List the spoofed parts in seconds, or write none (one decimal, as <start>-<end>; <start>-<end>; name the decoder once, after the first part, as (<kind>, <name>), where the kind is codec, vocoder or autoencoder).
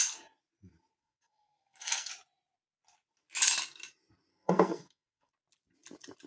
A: 1.0-2.1 (codec, SNAC); 4.3-5.3